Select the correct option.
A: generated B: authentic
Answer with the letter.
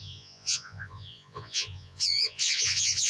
A